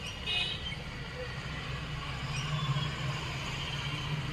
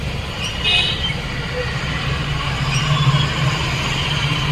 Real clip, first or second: first